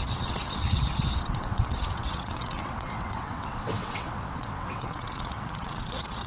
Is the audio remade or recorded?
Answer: remade